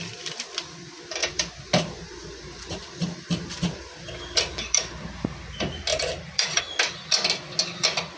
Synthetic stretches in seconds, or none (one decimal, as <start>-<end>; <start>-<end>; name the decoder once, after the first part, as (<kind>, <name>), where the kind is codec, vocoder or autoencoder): 1.2-3.8 (vocoder, BigVGAN v2); 5.9-6.6

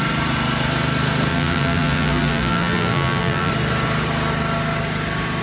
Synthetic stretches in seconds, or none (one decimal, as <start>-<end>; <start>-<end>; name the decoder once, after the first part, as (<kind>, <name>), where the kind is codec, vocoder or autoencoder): 1.3-3.5 (vocoder, BigVGAN v2)

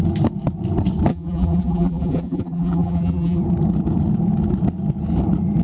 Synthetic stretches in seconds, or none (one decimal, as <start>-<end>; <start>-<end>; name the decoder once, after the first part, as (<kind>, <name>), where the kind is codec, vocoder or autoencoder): 1.1-3.4 (vocoder, BigVGAN v2)

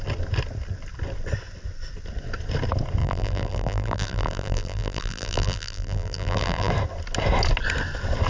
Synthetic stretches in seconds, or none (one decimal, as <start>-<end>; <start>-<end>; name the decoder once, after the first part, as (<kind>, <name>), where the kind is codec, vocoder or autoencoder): 3.0-6.7 (vocoder, BigVGAN v2)

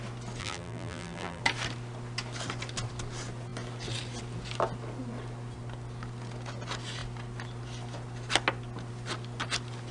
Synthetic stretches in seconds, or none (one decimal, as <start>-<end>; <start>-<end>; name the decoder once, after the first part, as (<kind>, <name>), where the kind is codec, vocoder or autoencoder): 0.4-1.4 (vocoder, BigVGAN v2)